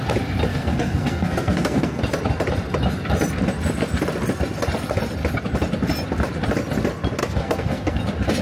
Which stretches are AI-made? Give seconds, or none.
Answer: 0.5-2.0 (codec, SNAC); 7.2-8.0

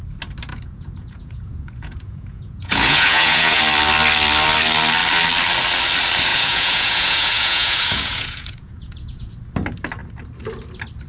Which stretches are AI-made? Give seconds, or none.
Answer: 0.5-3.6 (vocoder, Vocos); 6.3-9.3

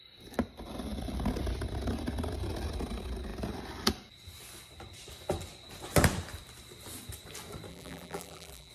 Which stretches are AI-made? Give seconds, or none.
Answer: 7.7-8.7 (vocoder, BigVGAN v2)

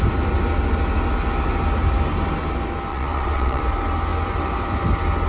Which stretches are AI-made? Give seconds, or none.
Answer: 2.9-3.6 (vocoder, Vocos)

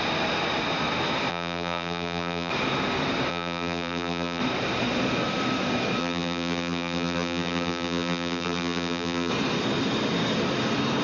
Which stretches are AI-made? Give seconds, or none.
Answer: 1.3-2.5 (vocoder, BigVGAN v2); 3.3-4.4; 6.0-9.3

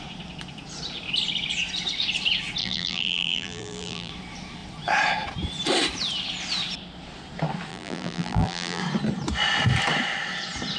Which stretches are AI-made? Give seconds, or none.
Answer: 2.6-4.1 (vocoder, BigVGAN v2); 7.7-8.8

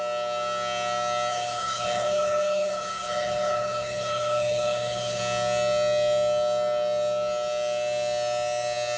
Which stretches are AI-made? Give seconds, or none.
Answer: 1.3-5.2 (codec, HILCodec)

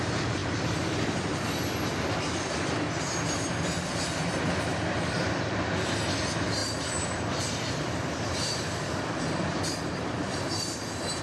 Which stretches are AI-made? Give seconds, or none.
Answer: 0.4-1.4 (vocoder, BigVGAN v2); 4.7-5.4; 6.6-11.2